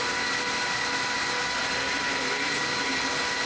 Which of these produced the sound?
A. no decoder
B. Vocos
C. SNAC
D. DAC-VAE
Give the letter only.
A